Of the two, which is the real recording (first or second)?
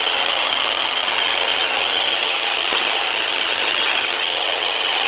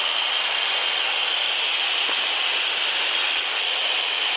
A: second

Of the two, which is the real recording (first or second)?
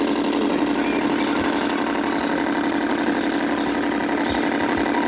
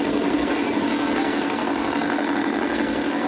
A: first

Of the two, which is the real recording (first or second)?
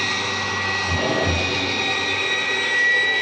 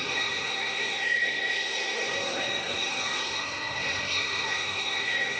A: first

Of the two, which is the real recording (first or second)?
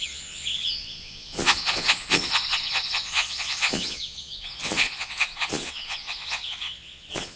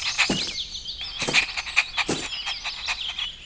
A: second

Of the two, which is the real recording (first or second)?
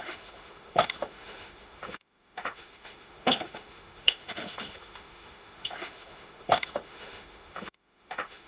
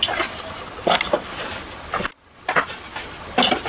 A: second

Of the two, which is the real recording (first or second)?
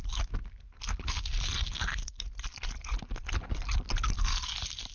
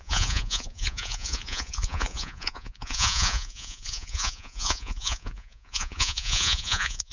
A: first